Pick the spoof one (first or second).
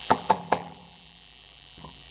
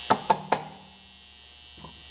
first